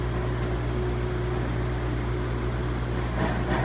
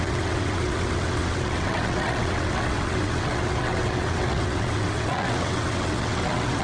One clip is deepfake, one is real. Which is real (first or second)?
first